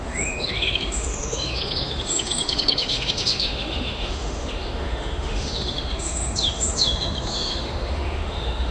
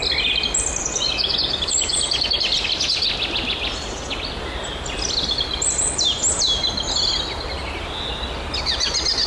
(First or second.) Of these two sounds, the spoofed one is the first